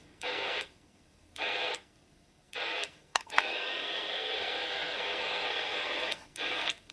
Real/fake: fake